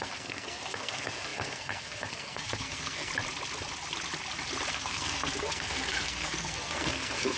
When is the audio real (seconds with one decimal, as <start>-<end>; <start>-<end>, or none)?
3.1-4.7